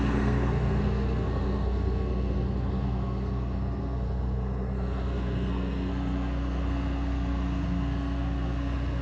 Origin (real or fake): fake